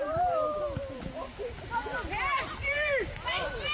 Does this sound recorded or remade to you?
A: recorded